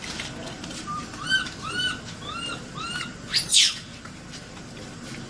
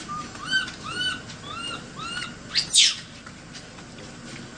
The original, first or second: second